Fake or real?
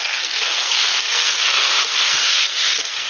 fake